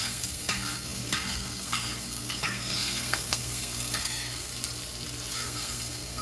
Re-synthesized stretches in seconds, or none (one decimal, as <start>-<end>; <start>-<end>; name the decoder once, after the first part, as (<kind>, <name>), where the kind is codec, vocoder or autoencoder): 0.0-4.5 (codec, SNAC); 5.3-6.2